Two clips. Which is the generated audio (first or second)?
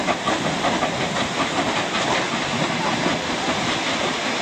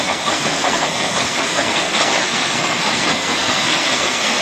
second